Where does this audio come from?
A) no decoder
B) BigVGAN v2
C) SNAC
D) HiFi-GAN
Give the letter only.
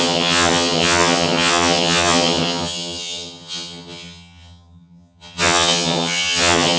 D